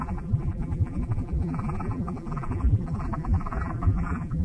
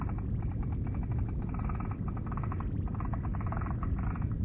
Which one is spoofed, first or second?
first